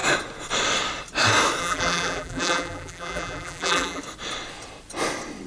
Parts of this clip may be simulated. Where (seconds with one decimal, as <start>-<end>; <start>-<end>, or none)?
1.6-4.0